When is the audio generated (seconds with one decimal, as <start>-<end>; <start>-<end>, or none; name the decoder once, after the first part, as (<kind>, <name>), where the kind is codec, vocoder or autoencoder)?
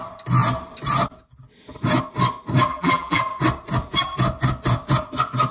2.7-3.2 (vocoder, BigVGAN v2)